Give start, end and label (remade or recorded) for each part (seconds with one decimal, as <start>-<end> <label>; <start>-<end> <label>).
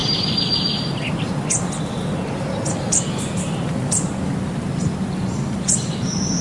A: 0.0-3.5 recorded; 3.5-6.4 remade